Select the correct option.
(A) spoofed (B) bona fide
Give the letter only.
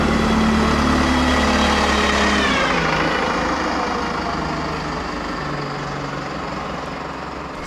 B